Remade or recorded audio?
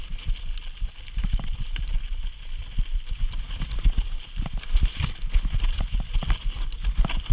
recorded